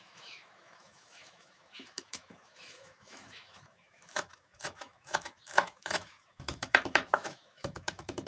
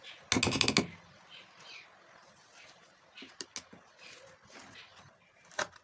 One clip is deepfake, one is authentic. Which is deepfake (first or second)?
first